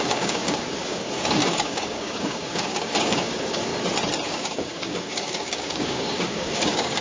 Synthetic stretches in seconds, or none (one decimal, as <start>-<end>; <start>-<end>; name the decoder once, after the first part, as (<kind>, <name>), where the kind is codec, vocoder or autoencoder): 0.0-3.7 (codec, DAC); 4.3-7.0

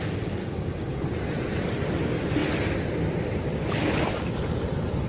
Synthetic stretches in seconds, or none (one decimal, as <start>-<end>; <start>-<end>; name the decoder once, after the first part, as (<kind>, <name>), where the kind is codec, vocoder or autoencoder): 0.4-1.0 (codec, DAC)

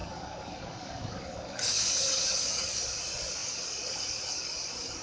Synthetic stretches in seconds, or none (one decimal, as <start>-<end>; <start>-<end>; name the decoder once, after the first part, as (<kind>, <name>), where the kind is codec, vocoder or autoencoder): 0.0-5.0 (codec, DAC)

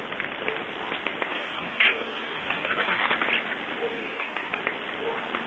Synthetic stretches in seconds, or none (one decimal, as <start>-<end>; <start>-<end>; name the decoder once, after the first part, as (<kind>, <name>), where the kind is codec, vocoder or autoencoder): 1.3-3.1 (codec, DAC); 3.9-4.6